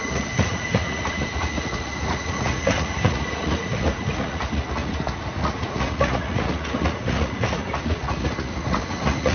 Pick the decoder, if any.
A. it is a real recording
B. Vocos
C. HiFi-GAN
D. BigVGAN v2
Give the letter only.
B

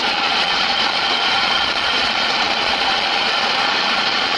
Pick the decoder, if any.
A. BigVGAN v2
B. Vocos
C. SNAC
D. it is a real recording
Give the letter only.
B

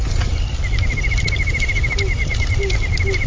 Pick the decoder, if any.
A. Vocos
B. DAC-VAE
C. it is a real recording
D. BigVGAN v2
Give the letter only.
C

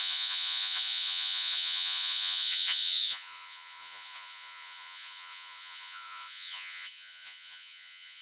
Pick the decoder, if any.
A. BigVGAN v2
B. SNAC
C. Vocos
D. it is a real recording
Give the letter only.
C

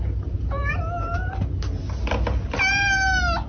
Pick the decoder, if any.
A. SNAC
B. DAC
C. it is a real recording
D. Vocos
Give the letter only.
C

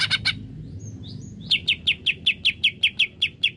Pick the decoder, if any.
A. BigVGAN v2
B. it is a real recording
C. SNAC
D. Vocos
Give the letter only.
B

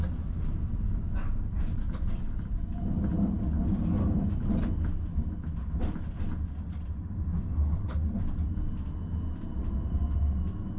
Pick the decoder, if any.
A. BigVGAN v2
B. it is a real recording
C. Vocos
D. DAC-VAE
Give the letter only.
B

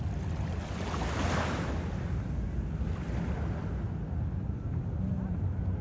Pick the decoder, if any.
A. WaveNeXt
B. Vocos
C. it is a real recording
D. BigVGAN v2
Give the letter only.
C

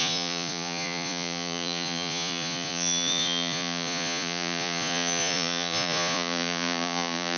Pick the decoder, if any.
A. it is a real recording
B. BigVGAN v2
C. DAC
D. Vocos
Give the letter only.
D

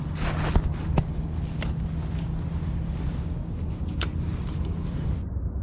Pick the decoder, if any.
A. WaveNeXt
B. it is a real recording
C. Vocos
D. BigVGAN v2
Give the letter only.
B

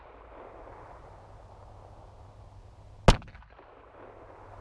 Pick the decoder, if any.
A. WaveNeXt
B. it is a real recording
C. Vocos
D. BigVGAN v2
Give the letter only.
B